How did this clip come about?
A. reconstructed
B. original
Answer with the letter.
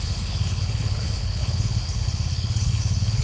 A